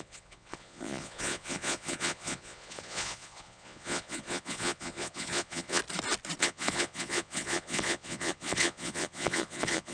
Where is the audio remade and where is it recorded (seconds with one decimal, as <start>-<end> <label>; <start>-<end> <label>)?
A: 0.0-5.8 remade; 5.8-6.4 recorded; 6.4-9.9 remade